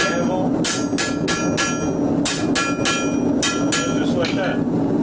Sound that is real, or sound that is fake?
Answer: real